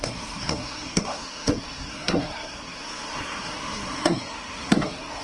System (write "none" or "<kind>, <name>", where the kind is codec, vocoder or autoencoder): codec, SNAC